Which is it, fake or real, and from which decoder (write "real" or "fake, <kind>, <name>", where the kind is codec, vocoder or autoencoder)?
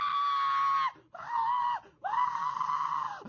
real